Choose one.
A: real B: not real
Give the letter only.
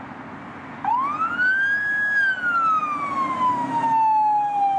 A